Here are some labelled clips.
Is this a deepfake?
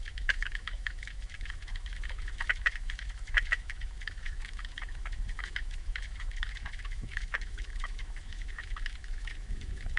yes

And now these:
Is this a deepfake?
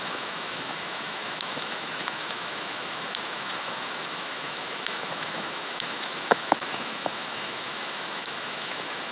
yes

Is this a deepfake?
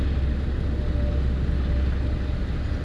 no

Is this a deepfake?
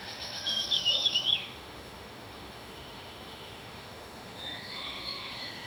yes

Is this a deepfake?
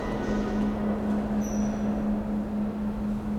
no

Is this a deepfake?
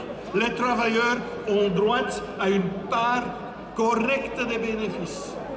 no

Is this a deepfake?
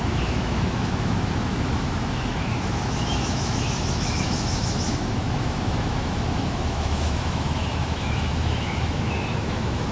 yes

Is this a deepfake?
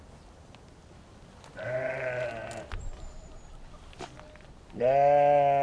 no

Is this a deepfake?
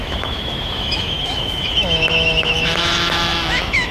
yes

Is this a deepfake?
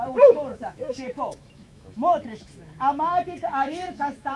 yes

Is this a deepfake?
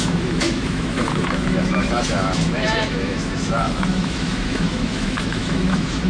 yes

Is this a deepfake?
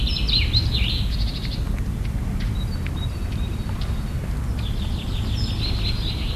no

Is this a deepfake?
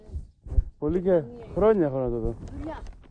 no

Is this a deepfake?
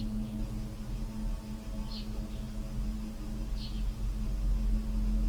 no